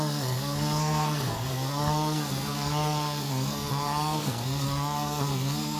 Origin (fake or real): fake